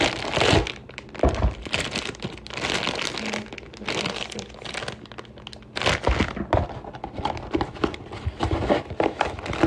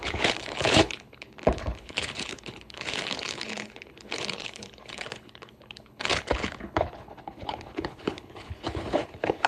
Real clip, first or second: first